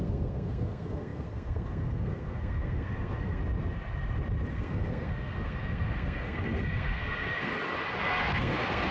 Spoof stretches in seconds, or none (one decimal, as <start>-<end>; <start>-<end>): 0.0-3.4; 4.5-7.5; 8.3-8.9